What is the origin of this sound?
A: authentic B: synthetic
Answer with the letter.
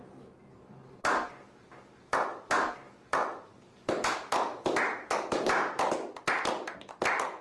A